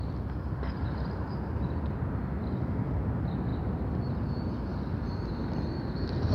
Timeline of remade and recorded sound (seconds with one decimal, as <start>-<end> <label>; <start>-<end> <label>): 0.0-3.5 recorded; 3.5-4.0 remade; 4.0-4.7 recorded; 4.7-5.3 remade; 5.3-6.3 recorded

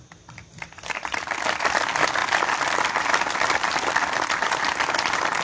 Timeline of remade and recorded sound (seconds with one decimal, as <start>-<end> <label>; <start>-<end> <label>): 0.0-5.4 recorded

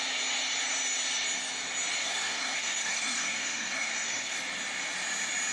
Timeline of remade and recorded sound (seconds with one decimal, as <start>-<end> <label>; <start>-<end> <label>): 0.0-2.0 recorded; 2.0-4.4 remade; 4.4-5.5 recorded